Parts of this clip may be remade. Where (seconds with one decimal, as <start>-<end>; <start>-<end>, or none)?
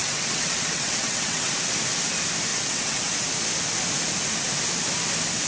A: 0.0-1.5; 2.5-3.1